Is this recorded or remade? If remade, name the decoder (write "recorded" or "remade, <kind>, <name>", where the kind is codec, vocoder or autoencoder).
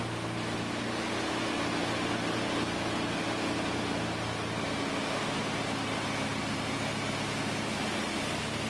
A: recorded